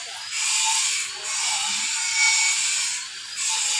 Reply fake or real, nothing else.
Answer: real